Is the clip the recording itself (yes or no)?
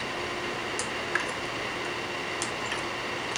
yes